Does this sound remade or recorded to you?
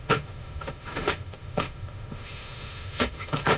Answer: remade